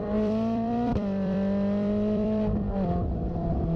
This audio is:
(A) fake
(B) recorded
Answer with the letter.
A